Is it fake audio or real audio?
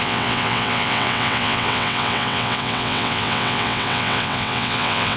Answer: fake